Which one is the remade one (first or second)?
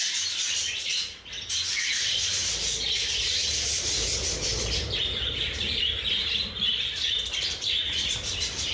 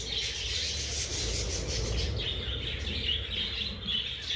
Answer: first